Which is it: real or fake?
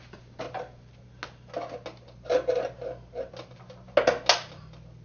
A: real